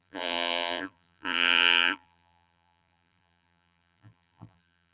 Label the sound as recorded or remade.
remade